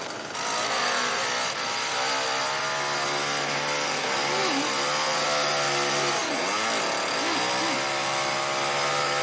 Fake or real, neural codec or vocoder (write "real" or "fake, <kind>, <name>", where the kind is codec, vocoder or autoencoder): real